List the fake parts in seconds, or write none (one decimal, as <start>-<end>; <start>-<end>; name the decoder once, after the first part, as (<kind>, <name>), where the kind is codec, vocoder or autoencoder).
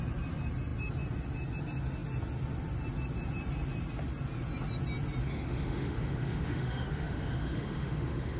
5.2-8.4 (autoencoder, DAC-VAE)